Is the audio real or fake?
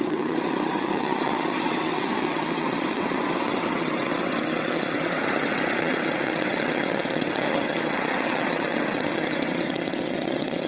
fake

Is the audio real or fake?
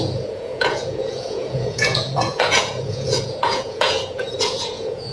fake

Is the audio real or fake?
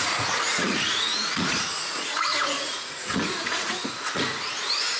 fake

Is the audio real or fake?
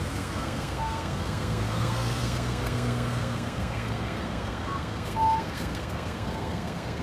fake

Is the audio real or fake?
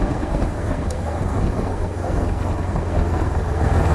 fake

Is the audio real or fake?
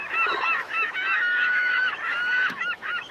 fake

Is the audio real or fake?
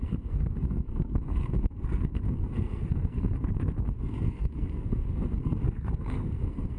fake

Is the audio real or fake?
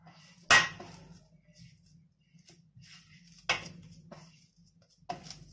real